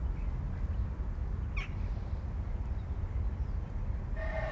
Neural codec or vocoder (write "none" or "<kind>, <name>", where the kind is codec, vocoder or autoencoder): none